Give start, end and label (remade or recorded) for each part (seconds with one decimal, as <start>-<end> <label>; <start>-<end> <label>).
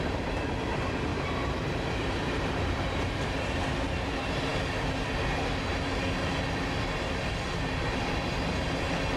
0.0-1.1 recorded; 1.1-3.6 remade; 3.6-9.2 recorded